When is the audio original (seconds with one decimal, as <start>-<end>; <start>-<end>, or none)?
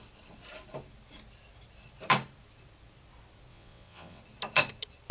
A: 0.0-3.5; 4.2-5.1